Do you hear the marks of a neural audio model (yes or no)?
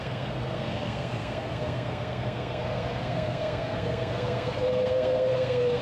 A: yes